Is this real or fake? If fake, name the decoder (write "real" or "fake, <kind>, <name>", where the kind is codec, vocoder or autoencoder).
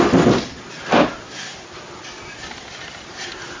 real